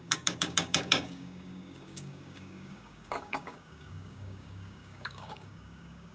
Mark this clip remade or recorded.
remade